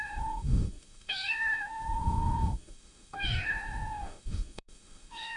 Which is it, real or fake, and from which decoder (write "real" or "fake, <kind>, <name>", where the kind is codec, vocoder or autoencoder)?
fake, autoencoder, DAC-VAE